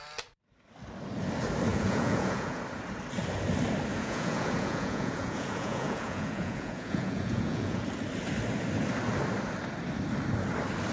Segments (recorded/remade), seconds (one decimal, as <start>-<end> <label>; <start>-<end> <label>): 0.0-1.7 recorded; 1.7-2.6 remade; 2.6-3.9 recorded; 3.9-7.8 remade; 7.8-10.9 recorded